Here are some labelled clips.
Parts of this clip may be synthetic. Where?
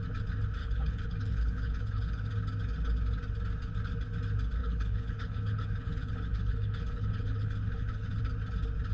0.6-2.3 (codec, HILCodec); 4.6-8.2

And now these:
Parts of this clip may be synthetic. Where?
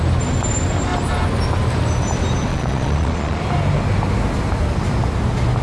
2.5-3.4 (vocoder, Vocos)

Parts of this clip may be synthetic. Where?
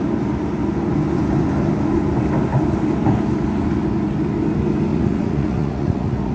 4.9-6.3 (vocoder, Vocos)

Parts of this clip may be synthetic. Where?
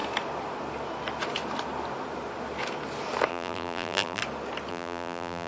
3.3-4.2 (vocoder, BigVGAN v2); 4.7-5.5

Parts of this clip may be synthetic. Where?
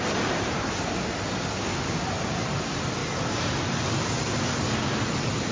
none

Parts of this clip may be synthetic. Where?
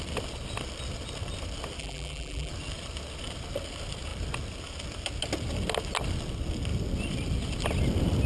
1.8-2.5 (vocoder, BigVGAN v2)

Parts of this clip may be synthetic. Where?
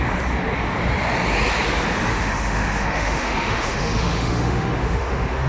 2.1-5.5 (autoencoder, DAC-VAE)